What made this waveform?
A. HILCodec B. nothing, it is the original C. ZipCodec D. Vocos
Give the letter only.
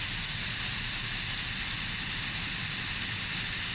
B